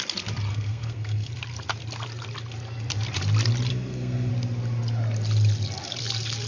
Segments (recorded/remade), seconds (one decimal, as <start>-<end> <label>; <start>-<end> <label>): 0.0-0.5 recorded; 0.5-1.3 remade; 1.3-3.7 recorded; 3.7-4.3 remade; 4.3-6.5 recorded